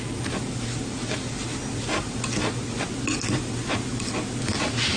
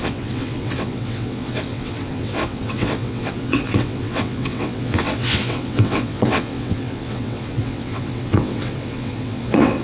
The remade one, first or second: second